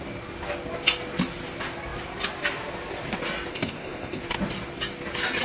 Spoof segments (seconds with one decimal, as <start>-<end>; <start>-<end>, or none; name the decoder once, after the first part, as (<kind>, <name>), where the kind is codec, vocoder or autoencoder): 3.5-4.2 (codec, ZipCodec)